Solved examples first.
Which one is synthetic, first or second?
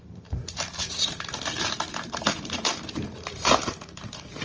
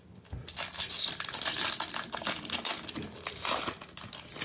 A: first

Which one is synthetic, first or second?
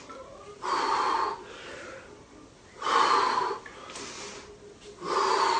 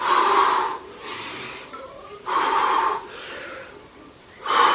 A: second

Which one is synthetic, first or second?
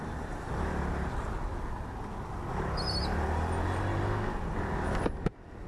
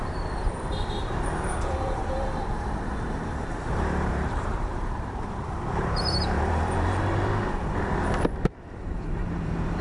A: second